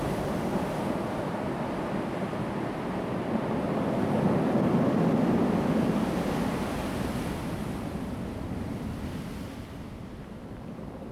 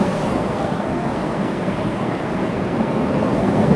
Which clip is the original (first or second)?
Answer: first